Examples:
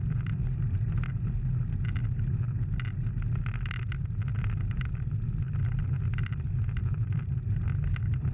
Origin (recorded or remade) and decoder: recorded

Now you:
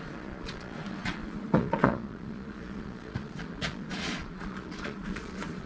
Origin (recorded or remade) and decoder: remade, vocoder, Vocos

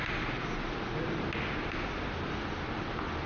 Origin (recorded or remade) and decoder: recorded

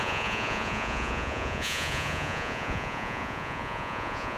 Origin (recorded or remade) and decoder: remade, vocoder, Vocos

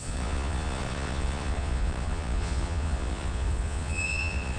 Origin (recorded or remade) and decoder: remade, vocoder, Vocos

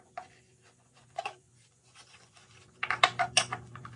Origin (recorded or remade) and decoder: remade, vocoder, Vocos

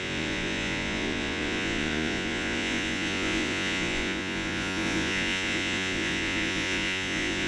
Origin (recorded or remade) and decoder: remade, vocoder, Vocos